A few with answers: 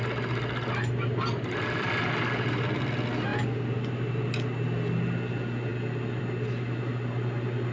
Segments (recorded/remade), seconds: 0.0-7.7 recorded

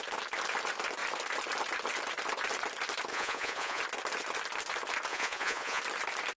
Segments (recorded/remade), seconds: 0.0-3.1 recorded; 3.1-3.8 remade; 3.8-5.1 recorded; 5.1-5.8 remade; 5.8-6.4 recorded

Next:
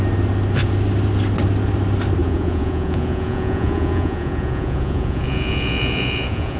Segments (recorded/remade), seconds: 0.0-2.2 recorded; 2.2-6.6 remade

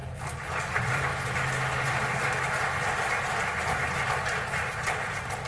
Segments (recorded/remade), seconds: 0.0-0.7 recorded; 0.7-1.1 remade; 1.1-4.4 recorded; 4.4-5.5 remade

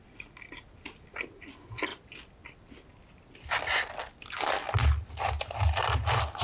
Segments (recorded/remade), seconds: 0.0-6.4 recorded